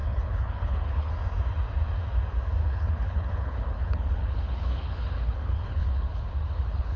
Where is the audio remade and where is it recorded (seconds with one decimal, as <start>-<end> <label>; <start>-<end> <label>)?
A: 0.0-1.1 remade; 1.1-2.6 recorded; 2.6-7.0 remade